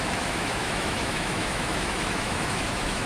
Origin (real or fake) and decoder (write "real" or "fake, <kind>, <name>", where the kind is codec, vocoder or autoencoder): fake, autoencoder, DAC-VAE